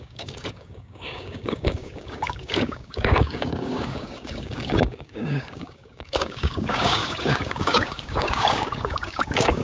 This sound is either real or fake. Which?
fake